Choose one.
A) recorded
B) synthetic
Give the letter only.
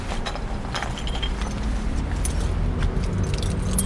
A